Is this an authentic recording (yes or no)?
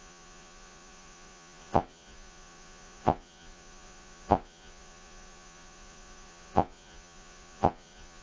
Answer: no